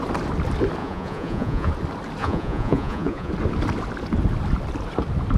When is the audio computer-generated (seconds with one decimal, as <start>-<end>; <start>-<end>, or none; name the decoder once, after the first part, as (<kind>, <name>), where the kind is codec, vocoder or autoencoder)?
0.8-1.7 (vocoder, Vocos); 2.2-3.3